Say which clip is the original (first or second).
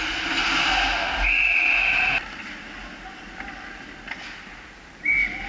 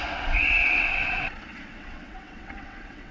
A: first